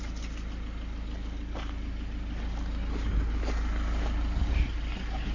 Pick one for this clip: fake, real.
real